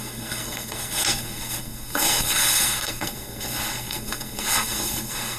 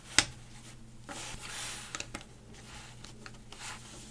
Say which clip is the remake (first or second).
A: first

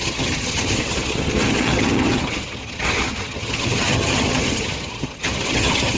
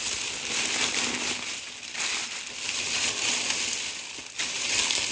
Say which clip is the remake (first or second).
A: first